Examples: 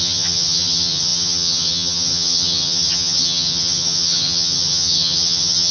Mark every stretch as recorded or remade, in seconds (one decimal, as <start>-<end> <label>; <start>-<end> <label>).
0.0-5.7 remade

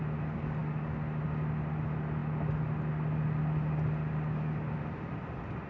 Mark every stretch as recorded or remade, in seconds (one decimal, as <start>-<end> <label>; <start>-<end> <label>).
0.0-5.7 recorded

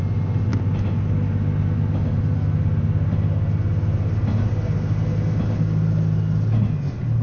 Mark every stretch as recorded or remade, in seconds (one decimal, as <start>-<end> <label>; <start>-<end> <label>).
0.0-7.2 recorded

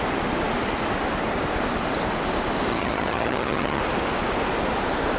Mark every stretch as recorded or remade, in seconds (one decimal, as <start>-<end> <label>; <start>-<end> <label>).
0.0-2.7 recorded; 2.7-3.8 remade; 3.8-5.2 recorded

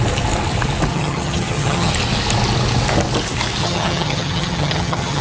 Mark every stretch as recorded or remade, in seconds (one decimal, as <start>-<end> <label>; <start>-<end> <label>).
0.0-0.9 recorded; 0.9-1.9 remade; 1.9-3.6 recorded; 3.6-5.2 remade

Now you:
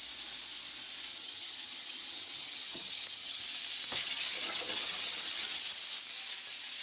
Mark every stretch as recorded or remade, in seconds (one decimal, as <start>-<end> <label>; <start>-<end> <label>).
0.0-1.1 recorded; 1.1-3.4 remade; 3.4-4.0 recorded; 4.0-5.8 remade; 5.8-6.8 recorded

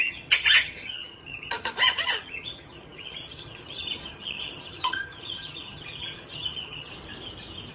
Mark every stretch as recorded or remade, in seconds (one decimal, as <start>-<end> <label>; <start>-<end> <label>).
0.0-6.9 remade; 6.9-7.7 recorded